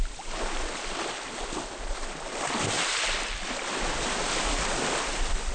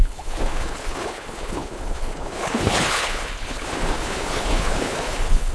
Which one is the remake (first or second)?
second